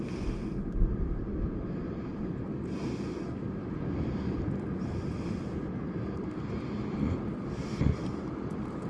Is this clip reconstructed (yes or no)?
no